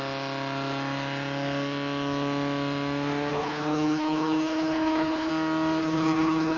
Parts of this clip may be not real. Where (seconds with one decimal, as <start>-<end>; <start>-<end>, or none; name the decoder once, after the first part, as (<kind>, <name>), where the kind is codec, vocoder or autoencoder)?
3.3-5.3 (codec, HILCodec); 5.8-6.6